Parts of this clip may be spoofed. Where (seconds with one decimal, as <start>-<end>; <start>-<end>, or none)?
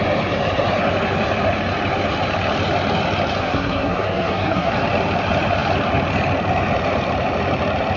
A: 3.4-4.7